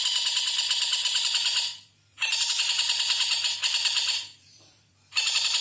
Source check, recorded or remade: remade